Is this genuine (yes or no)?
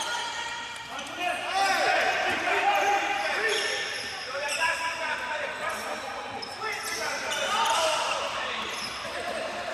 yes